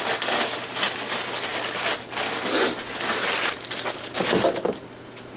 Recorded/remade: recorded